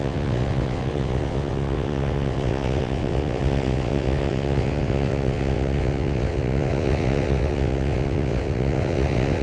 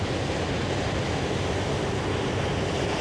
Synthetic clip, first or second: first